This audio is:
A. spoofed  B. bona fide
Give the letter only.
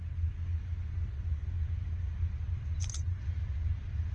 B